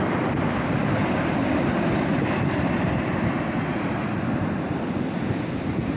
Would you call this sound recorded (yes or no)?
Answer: no